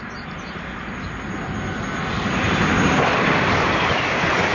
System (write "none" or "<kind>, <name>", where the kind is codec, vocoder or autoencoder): none